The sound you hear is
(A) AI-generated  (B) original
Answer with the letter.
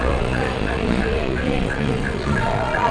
A